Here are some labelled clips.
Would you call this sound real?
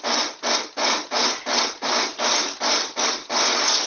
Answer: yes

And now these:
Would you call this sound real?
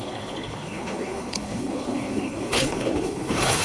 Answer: no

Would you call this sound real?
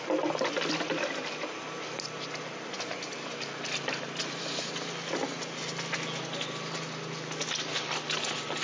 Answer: yes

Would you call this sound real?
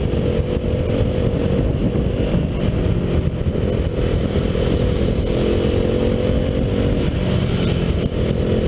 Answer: yes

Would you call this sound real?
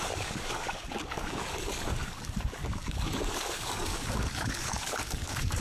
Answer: no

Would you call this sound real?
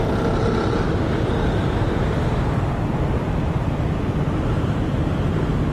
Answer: yes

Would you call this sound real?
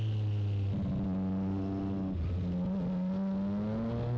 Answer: yes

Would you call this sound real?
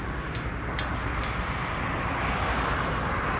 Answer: yes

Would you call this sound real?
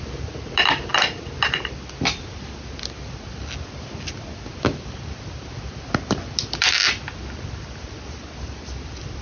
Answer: yes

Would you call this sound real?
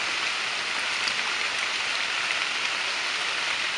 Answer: yes